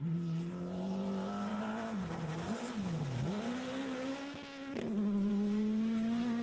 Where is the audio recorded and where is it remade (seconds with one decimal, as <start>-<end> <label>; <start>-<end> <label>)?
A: 0.0-6.4 recorded